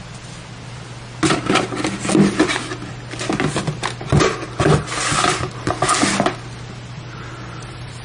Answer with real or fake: real